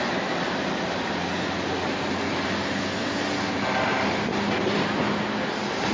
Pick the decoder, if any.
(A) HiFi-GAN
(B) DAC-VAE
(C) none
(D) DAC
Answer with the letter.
C